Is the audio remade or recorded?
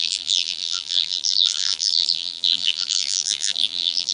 remade